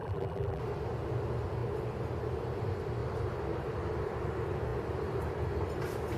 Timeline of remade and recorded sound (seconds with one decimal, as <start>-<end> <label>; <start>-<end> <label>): 0.0-0.6 remade; 0.6-6.2 recorded